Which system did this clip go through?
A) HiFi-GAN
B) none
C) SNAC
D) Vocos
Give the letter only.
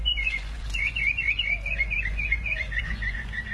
D